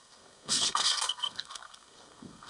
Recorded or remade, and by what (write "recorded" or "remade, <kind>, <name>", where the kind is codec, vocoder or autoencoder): remade, codec, SNAC